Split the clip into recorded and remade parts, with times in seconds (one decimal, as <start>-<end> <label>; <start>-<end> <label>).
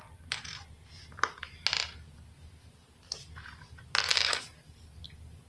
0.0-5.5 recorded